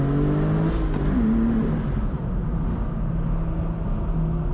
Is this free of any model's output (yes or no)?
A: yes